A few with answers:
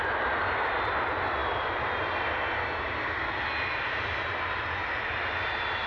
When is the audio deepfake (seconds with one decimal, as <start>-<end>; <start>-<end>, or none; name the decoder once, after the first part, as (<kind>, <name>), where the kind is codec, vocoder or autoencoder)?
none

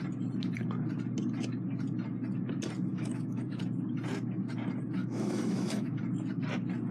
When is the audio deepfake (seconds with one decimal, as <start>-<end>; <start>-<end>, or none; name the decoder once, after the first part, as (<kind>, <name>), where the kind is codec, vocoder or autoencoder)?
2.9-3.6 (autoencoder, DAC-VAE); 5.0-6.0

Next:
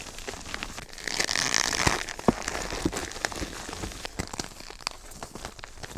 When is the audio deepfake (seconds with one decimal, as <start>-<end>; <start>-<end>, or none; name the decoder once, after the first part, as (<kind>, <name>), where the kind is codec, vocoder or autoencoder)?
none

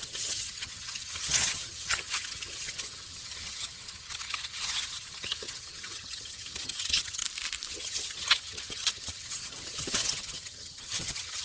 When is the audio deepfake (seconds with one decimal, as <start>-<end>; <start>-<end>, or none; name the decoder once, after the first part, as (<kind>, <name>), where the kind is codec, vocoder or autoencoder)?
0.0-7.2 (vocoder, HiFi-GAN); 7.7-11.4

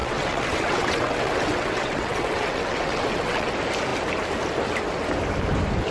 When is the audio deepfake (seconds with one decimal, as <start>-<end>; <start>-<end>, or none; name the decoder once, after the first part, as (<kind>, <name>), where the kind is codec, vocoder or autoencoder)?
0.0-3.5 (vocoder, WaveNeXt)

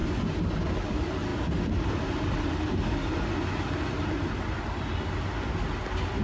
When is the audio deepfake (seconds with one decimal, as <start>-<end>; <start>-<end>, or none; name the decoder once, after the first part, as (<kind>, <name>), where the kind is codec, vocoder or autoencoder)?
none

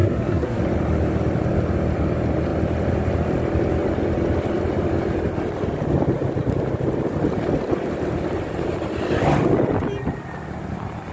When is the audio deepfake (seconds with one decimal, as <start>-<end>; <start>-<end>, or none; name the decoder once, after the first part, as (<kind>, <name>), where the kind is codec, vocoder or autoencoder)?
0.0-0.6 (codec, SNAC)

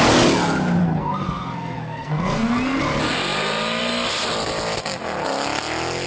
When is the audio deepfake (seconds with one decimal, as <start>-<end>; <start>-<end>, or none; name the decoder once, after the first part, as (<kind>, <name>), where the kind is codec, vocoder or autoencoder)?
0.8-2.8 (codec, SNAC)